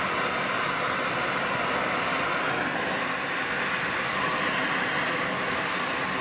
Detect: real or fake real